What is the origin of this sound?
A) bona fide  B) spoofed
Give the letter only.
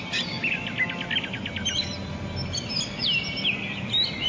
A